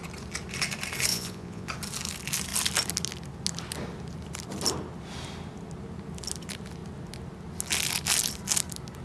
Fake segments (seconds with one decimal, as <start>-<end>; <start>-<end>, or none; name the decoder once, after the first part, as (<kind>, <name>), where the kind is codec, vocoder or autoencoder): 1.1-1.7 (vocoder, Vocos)